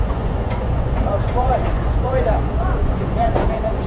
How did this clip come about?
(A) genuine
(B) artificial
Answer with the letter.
B